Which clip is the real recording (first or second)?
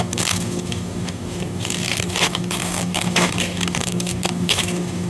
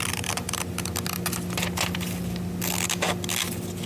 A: second